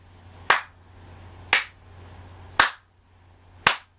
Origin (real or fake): real